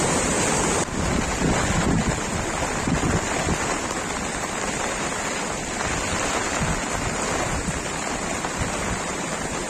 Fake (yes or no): yes